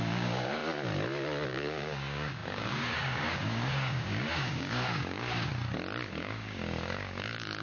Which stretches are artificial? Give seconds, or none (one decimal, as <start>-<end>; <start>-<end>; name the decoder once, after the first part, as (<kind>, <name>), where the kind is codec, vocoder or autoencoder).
0.0-0.6 (codec, DAC); 1.5-5.5; 6.1-7.6